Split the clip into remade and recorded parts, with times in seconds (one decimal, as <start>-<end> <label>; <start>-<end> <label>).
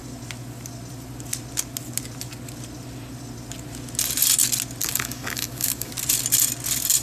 0.0-4.9 recorded; 4.9-5.9 remade; 5.9-7.0 recorded